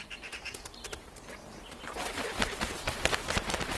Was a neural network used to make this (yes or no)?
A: no